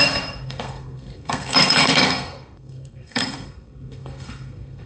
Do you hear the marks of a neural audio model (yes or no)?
yes